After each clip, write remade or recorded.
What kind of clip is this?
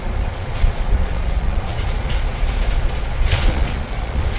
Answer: remade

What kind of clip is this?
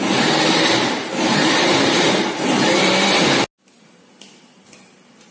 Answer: recorded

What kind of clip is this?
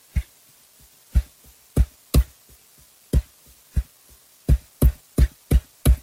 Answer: recorded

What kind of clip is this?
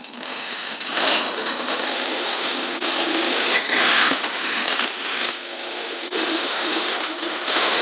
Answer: remade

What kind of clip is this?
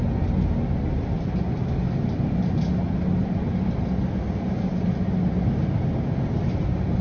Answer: recorded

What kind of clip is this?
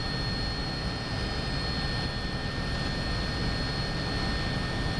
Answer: recorded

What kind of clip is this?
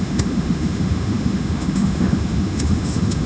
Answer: remade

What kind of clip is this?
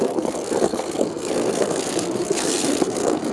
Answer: remade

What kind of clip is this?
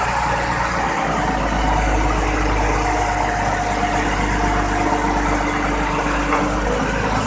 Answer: recorded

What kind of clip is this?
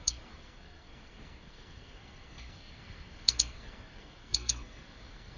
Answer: remade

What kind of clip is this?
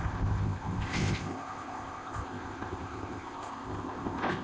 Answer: remade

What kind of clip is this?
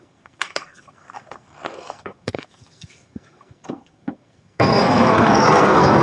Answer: remade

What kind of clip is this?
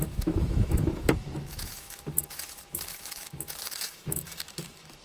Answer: remade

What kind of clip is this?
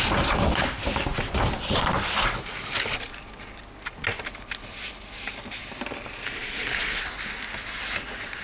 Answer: recorded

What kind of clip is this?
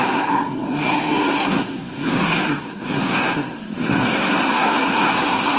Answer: remade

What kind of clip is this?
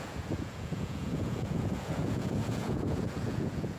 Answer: remade